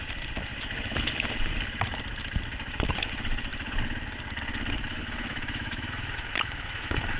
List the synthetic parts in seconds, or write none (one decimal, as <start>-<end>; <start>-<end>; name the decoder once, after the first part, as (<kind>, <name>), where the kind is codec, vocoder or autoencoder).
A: 4.9-7.2 (autoencoder, DAC-VAE)